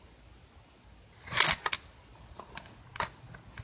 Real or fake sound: real